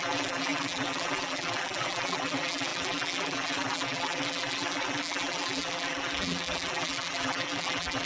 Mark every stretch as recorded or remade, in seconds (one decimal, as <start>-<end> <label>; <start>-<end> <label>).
0.0-8.1 remade